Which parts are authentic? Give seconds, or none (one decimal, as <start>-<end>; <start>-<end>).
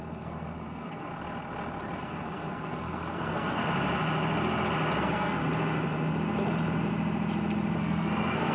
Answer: 1.1-2.0; 3.6-5.0; 5.4-7.8